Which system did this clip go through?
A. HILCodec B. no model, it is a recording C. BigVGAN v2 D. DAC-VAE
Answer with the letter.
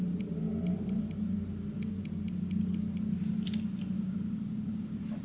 B